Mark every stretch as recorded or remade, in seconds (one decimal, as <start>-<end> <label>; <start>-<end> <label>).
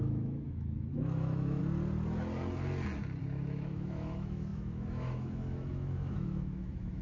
0.0-1.6 remade; 1.6-3.2 recorded; 3.2-7.0 remade